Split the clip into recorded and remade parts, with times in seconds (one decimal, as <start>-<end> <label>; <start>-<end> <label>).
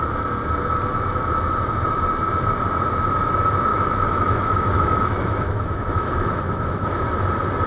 0.0-3.7 recorded; 3.7-7.2 remade; 7.2-7.7 recorded